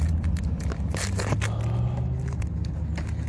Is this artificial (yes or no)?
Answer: no